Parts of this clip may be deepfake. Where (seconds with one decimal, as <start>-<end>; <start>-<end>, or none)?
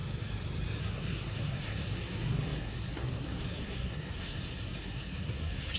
0.8-5.8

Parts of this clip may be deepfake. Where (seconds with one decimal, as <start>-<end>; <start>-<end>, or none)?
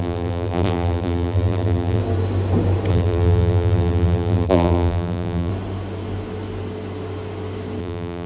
0.0-2.0; 2.9-5.5; 7.8-8.3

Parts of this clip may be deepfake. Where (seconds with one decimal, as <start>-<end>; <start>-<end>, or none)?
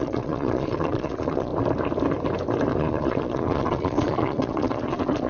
0.0-1.5; 2.7-5.3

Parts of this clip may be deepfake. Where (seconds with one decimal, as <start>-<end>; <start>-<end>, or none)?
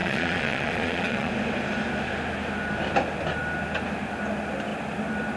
0.0-1.3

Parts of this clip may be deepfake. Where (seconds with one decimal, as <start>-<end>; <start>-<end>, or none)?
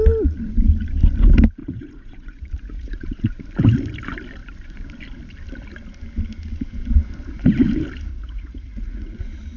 1.6-3.4; 8.1-9.2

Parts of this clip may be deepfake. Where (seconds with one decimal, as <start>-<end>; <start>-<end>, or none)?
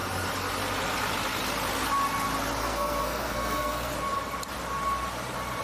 2.6-3.9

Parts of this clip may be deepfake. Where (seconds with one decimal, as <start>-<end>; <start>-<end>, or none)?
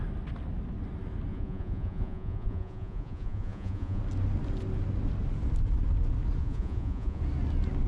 1.3-4.0; 6.4-7.2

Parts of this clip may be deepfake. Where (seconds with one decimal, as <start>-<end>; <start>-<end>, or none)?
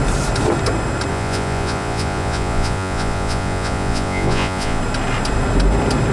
1.1-4.8